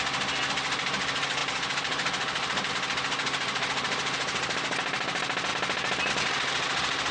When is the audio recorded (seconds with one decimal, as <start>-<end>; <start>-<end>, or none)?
0.0-7.1